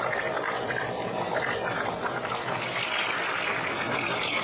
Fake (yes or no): yes